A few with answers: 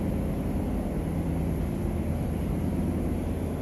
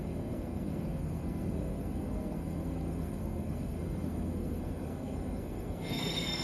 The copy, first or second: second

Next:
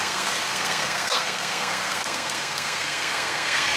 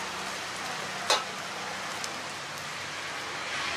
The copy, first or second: first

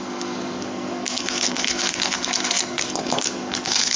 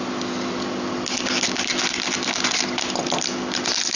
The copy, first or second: first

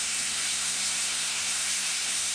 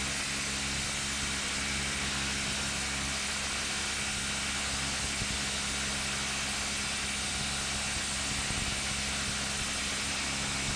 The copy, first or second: first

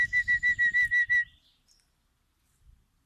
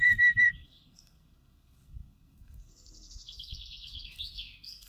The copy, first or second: second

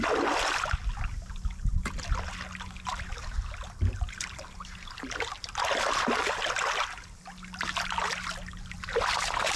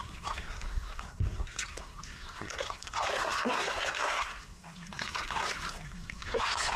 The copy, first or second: second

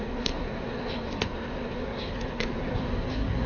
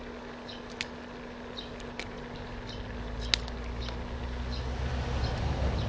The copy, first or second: first